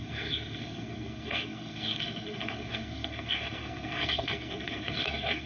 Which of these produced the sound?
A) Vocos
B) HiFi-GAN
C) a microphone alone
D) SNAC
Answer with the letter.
D